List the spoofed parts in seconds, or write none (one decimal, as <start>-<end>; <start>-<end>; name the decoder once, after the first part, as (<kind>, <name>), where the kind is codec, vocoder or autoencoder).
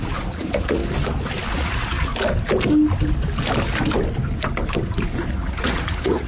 0.0-0.8 (vocoder, Vocos); 1.5-2.1; 5.3-6.3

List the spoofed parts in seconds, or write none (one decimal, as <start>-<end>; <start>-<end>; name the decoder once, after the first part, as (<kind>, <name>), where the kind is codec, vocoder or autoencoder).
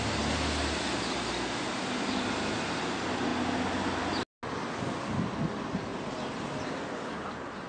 none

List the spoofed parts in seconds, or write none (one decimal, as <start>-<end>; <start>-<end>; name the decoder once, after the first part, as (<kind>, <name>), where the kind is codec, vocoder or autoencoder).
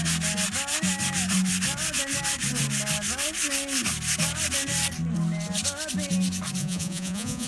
6.6-7.5 (vocoder, Vocos)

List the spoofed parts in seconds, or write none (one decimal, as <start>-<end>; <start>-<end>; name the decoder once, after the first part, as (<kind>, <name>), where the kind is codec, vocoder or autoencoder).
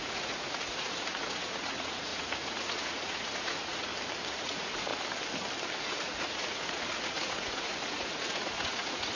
0.0-3.9 (vocoder, Vocos); 4.4-4.9; 5.8-9.2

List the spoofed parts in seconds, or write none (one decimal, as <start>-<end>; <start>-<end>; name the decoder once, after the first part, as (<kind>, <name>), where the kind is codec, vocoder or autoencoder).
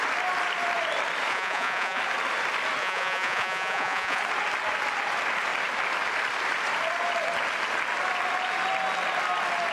1.3-2.0 (vocoder, Vocos); 2.8-4.2